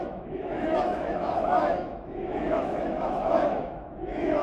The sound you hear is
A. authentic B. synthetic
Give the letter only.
B